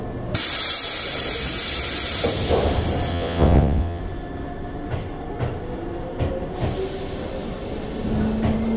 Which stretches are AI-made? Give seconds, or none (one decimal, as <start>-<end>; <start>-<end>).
3.1-4.0